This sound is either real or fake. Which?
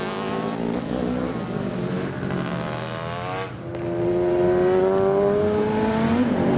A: real